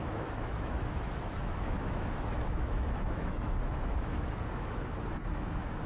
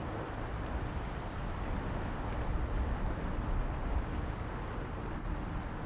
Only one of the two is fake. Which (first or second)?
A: first